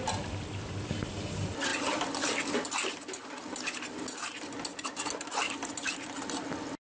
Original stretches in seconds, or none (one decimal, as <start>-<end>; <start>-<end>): 0.0-7.0